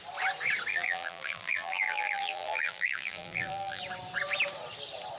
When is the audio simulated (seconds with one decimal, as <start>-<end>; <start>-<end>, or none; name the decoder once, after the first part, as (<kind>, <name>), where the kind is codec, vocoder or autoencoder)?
0.7-3.8 (vocoder, BigVGAN v2)